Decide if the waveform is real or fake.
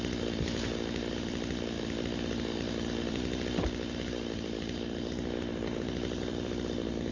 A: fake